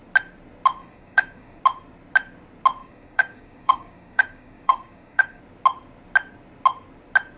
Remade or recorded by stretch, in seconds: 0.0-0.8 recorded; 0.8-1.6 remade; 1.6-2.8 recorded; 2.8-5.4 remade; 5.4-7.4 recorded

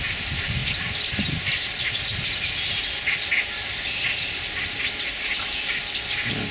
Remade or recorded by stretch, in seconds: 0.0-6.5 recorded

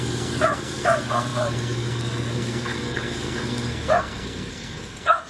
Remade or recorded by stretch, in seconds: 0.0-5.3 remade

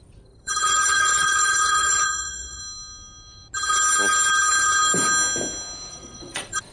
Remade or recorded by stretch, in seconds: 0.0-2.6 remade; 2.6-5.9 recorded; 5.9-6.7 remade

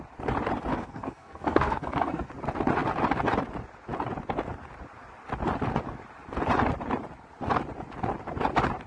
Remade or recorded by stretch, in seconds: 0.0-0.7 recorded; 0.7-2.3 remade; 2.3-8.9 recorded

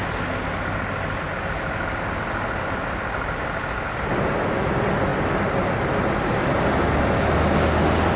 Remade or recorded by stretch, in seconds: 0.0-8.2 recorded

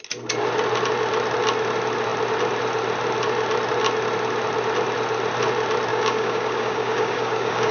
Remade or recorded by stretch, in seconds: 0.0-5.9 recorded; 5.9-7.7 remade

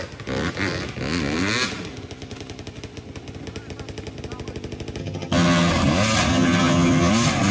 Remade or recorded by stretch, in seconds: 0.0-5.0 recorded; 5.0-5.7 remade; 5.7-6.3 recorded; 6.3-7.1 remade; 7.1-7.5 recorded